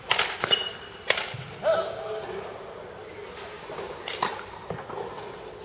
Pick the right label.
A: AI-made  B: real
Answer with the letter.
B